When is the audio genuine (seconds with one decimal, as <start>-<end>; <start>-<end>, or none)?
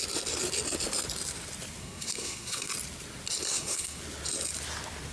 0.0-1.8; 2.7-3.5; 4.0-5.1